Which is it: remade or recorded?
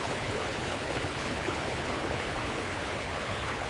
remade